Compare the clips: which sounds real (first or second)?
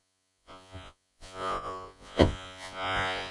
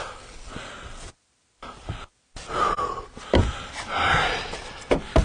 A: second